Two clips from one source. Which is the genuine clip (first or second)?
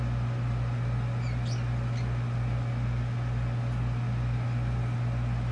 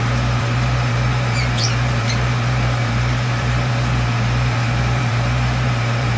first